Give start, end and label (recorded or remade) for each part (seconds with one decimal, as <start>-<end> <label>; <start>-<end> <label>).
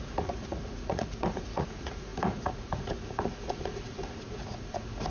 0.0-5.1 remade